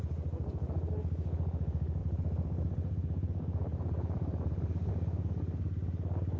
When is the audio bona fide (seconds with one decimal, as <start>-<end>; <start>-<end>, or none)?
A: 0.0-2.0; 4.9-6.4